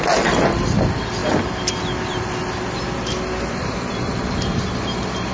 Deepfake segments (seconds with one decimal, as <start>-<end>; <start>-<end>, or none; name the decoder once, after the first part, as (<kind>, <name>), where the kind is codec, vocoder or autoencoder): none